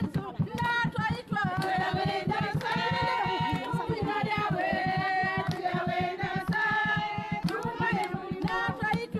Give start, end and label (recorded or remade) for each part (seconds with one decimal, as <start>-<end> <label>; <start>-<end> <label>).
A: 0.0-8.2 remade; 8.2-9.2 recorded